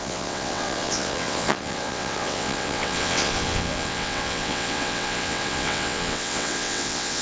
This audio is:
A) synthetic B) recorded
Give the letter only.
A